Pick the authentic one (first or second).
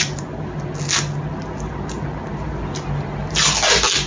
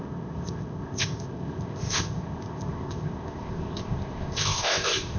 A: first